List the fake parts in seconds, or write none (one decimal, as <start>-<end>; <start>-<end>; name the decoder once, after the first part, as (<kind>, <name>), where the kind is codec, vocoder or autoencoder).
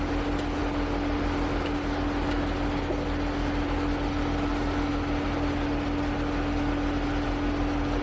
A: none